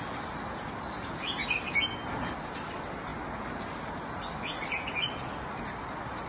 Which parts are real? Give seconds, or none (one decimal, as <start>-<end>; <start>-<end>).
0.0-6.3